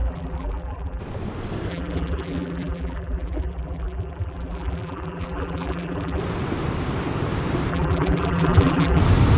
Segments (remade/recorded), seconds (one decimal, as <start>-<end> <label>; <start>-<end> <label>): 0.0-1.0 remade; 1.0-1.7 recorded; 1.7-6.2 remade; 6.2-7.7 recorded; 7.7-9.0 remade; 9.0-9.4 recorded